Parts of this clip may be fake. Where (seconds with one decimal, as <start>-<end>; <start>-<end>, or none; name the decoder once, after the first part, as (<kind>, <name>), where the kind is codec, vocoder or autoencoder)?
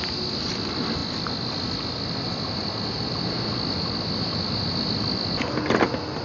none